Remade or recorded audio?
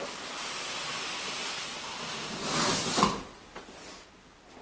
recorded